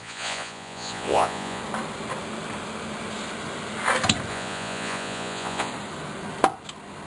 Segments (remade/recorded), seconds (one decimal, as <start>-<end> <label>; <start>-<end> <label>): 0.0-1.6 remade; 1.6-4.3 recorded; 4.3-5.7 remade; 5.7-7.1 recorded